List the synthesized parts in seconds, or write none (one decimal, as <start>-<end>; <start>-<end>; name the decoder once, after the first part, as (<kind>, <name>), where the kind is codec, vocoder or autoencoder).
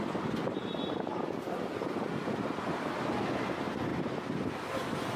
none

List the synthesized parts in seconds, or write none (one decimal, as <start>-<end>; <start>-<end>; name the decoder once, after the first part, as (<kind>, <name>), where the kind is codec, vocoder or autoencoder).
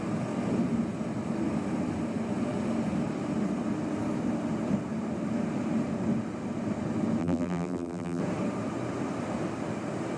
7.2-8.2 (vocoder, BigVGAN v2)